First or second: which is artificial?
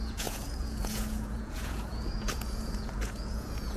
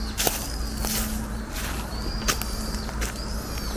first